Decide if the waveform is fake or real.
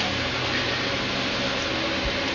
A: real